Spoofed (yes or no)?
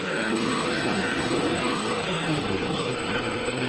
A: yes